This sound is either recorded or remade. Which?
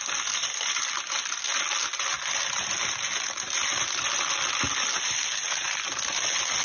recorded